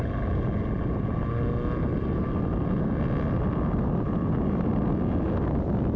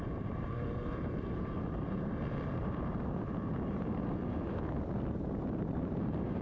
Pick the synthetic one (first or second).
second